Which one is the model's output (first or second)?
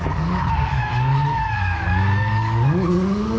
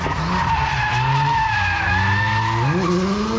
first